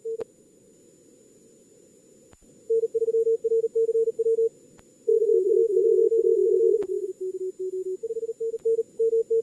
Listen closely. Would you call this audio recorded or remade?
recorded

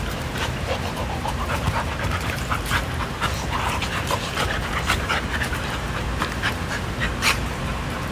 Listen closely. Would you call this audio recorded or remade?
remade